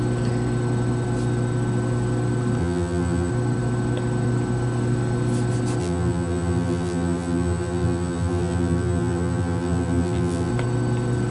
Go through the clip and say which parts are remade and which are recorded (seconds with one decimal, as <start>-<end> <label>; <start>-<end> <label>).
0.0-2.6 recorded; 2.6-3.3 remade; 3.3-5.8 recorded; 5.8-10.5 remade; 10.5-11.3 recorded